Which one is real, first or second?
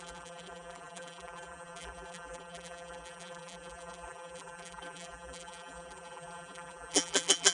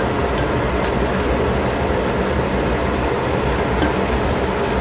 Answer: second